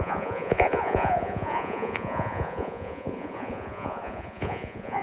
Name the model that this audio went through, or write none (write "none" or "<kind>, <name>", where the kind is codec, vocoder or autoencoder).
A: vocoder, Vocos